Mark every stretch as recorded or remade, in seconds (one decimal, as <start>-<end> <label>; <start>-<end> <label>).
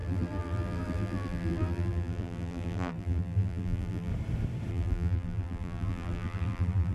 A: 0.0-4.1 remade; 4.1-4.7 recorded; 4.7-6.9 remade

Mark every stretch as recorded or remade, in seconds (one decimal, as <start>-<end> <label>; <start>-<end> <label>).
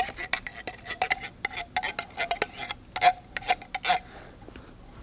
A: 0.0-5.0 recorded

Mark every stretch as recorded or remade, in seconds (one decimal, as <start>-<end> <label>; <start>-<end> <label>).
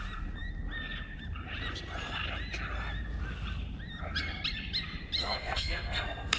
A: 0.0-5.2 recorded; 5.2-6.4 remade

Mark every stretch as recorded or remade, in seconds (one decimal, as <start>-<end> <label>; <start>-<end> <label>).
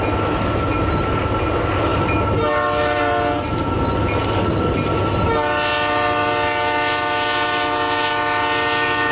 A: 0.0-9.1 recorded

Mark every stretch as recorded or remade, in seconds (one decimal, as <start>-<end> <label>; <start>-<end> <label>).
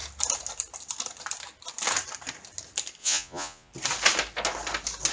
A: 0.0-3.0 recorded; 3.0-3.7 remade; 3.7-5.1 recorded